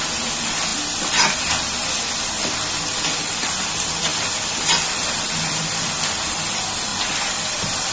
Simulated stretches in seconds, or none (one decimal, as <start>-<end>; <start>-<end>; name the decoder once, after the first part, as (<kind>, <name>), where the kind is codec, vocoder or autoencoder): 6.9-7.9 (vocoder, BigVGAN v2)